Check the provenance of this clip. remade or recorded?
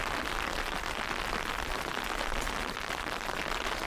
recorded